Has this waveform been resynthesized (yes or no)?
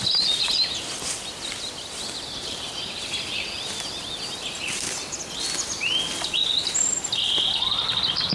no